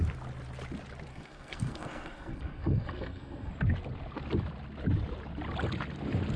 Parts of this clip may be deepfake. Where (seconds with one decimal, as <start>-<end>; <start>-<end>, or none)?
1.1-3.5